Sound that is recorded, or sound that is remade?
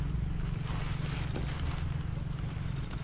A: recorded